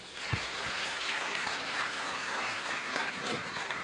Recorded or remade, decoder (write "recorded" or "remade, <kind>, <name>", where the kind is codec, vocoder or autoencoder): remade, codec, SNAC